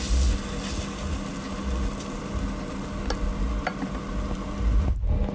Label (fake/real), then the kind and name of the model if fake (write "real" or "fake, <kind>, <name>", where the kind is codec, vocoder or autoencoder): real